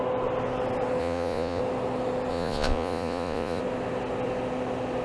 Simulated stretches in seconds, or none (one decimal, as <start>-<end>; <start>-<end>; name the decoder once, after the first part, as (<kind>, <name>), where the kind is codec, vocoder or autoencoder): 1.0-1.6 (vocoder, Vocos); 2.3-3.6

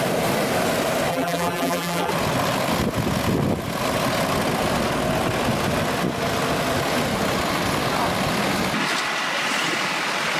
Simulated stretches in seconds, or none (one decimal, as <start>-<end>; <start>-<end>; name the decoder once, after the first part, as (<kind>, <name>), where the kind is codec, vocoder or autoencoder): 1.1-2.1 (vocoder, BigVGAN v2)